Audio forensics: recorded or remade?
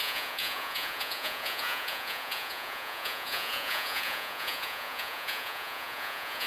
remade